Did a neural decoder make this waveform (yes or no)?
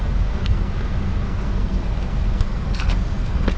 yes